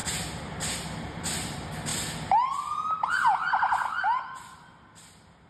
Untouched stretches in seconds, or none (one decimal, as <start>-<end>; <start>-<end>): 0.0-5.5